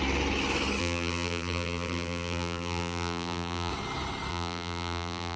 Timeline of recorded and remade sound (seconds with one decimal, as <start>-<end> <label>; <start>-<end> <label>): 0.0-0.8 recorded; 0.8-3.7 remade; 3.7-4.3 recorded; 4.3-5.4 remade